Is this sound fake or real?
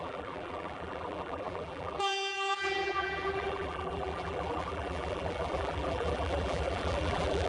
fake